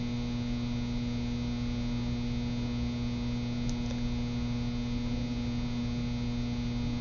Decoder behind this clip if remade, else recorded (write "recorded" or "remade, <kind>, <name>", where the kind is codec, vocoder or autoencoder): recorded